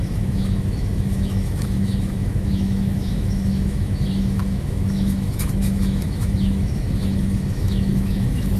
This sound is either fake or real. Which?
fake